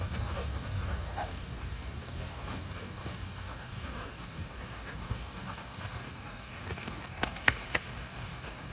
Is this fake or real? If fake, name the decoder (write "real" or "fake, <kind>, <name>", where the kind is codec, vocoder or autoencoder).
fake, codec, DAC